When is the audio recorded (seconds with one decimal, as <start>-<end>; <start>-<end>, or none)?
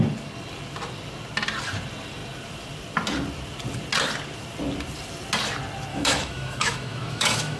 0.0-5.9